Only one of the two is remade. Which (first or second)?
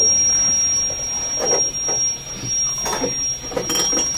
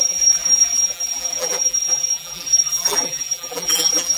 second